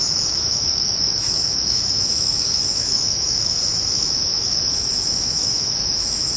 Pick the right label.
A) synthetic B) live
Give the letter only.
A